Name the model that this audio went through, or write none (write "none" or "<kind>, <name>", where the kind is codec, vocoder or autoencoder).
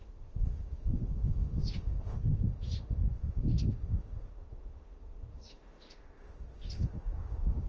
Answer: autoencoder, DAC-VAE